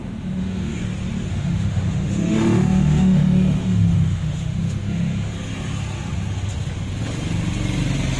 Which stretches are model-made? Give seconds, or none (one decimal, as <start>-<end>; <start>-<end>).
0.0-0.8; 1.3-5.3